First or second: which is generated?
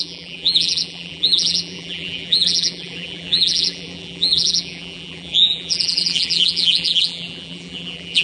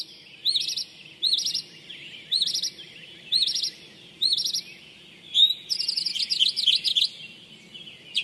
first